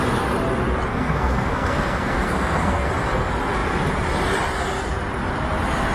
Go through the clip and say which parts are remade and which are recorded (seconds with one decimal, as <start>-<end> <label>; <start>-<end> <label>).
0.0-0.9 recorded; 0.9-2.9 remade; 2.9-5.9 recorded